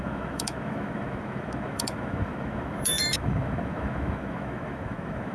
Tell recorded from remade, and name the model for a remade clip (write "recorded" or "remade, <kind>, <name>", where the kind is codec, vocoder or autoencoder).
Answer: remade, autoencoder, DAC-VAE